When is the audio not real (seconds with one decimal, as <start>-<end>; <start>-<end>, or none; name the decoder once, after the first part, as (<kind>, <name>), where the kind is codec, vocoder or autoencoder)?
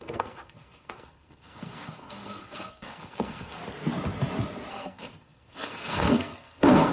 0.0-3.6 (codec, SNAC); 4.7-6.9